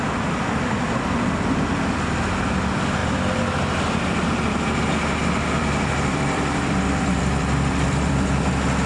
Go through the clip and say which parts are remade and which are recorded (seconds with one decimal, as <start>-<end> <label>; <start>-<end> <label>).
0.0-5.2 recorded; 5.2-8.5 remade; 8.5-8.9 recorded